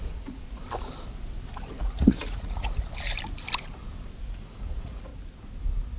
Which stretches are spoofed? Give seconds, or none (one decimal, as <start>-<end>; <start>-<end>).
0.0-0.6; 1.5-2.7; 4.2-5.1